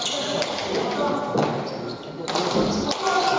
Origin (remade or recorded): recorded